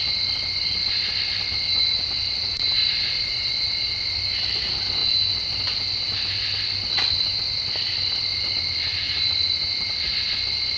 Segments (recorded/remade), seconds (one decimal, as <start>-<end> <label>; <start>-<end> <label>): 0.0-2.4 recorded; 2.4-3.5 remade; 3.5-8.9 recorded; 8.9-10.1 remade; 10.1-10.8 recorded